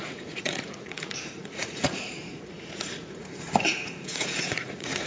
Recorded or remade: remade